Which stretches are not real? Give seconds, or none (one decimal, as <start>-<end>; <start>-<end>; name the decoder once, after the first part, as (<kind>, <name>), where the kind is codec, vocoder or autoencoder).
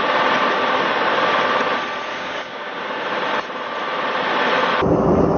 2.1-2.8 (codec, DAC)